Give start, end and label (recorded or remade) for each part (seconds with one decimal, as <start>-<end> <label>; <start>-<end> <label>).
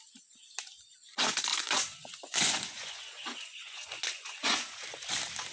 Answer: 0.0-1.5 recorded; 1.5-4.8 remade; 4.8-5.5 recorded